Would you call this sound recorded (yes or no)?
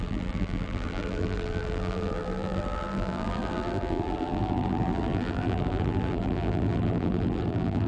no